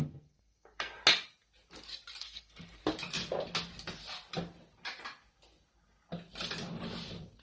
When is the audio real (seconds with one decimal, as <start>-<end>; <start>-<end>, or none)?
1.0-2.2; 2.8-7.4